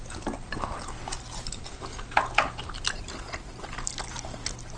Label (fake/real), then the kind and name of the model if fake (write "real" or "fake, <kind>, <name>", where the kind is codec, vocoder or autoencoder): real